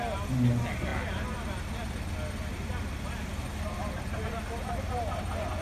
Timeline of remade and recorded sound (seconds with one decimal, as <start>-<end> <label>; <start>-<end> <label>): 0.0-5.6 recorded

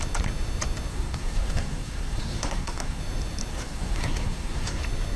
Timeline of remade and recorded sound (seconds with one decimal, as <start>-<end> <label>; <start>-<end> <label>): 0.0-0.9 recorded; 0.9-3.0 remade; 3.0-3.5 recorded; 3.5-4.8 remade; 4.8-5.2 recorded

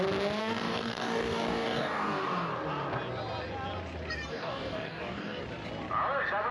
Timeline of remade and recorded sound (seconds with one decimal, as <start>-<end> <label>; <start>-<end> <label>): 0.0-0.4 recorded; 0.4-2.5 remade; 2.5-4.3 recorded; 4.3-5.4 remade; 5.4-6.5 recorded

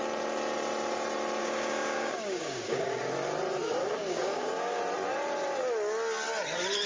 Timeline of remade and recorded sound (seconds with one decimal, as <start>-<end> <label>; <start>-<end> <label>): 0.0-1.4 recorded; 1.4-3.0 remade; 3.0-3.8 recorded; 3.8-4.8 remade; 4.8-6.9 recorded

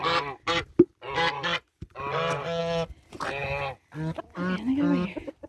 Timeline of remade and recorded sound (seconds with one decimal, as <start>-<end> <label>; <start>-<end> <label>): 0.0-5.5 recorded

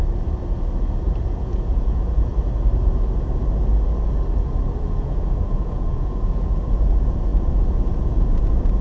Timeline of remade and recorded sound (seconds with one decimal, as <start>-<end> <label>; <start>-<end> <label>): 0.0-1.2 recorded; 1.2-2.3 remade; 2.3-4.8 recorded; 4.8-8.8 remade